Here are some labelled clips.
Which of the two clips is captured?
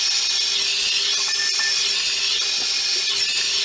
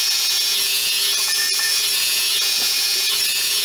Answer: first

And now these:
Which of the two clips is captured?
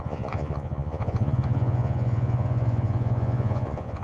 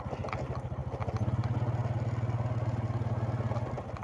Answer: second